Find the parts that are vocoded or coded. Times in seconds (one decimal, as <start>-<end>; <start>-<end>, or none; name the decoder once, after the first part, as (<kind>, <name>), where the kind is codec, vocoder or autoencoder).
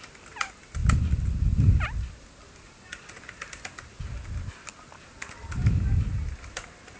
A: none